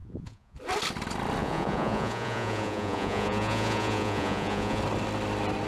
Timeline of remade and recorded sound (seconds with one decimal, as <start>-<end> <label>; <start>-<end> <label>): 0.0-0.6 remade; 0.6-1.4 recorded; 1.4-4.8 remade; 4.8-5.7 recorded